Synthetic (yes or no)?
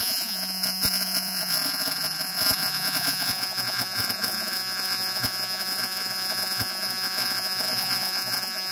yes